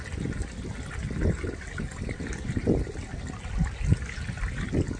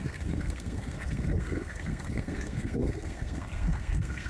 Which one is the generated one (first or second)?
second